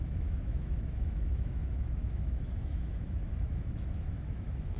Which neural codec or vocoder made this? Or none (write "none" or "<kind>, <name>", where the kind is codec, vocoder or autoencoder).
autoencoder, DAC-VAE